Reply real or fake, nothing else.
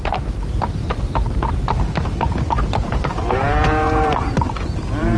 fake